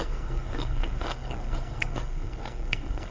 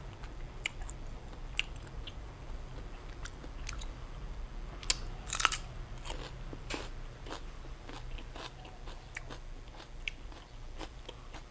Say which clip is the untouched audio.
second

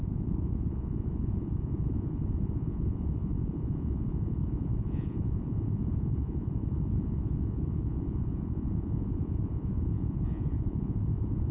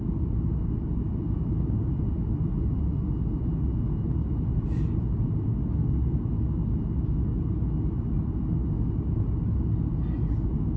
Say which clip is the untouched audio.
second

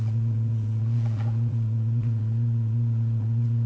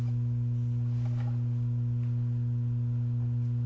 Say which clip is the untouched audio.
second